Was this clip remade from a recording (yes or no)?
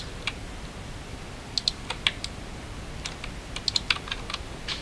no